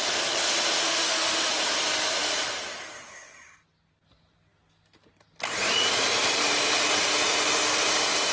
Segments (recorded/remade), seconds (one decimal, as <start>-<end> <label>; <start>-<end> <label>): 0.0-0.8 recorded; 0.8-1.5 remade; 1.5-8.3 recorded